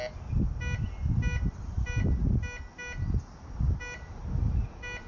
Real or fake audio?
real